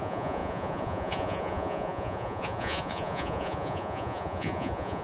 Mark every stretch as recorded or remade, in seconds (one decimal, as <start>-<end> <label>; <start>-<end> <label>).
0.0-5.0 remade